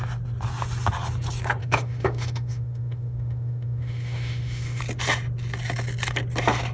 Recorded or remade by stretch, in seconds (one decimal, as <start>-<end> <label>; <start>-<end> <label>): 0.0-1.6 recorded; 1.6-4.8 remade; 4.8-6.7 recorded